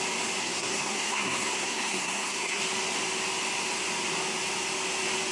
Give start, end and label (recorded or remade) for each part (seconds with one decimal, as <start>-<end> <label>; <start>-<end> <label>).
0.0-0.4 recorded; 0.4-2.6 remade; 2.6-5.3 recorded